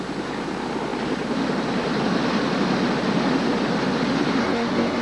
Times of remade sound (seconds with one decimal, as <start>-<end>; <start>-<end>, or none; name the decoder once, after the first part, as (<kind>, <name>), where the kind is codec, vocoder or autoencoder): 4.4-5.0 (codec, SNAC)